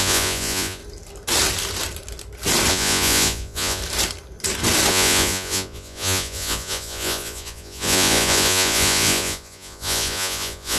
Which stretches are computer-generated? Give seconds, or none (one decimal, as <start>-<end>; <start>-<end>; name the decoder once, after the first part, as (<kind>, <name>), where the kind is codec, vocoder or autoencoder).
0.0-0.8 (vocoder, Vocos); 2.7-3.8; 4.9-10.8